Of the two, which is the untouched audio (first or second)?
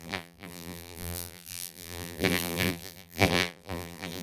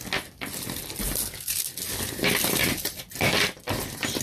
second